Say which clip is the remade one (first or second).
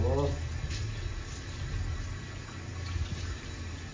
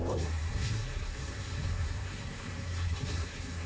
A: second